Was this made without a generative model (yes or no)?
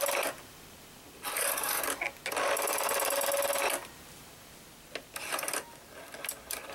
yes